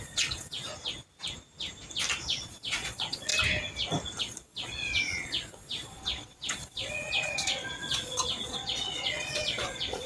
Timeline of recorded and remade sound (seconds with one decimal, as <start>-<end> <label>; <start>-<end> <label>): 0.0-0.7 remade; 0.7-2.2 recorded; 2.2-3.3 remade; 3.3-4.2 recorded; 4.2-10.1 remade